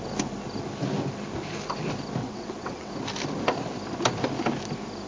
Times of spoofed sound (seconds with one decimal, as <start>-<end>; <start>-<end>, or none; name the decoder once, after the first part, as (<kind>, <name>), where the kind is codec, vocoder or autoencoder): 2.2-2.9 (vocoder, WaveNeXt)